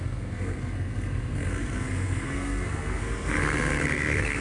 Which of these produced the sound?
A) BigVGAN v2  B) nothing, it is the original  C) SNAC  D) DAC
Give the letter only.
C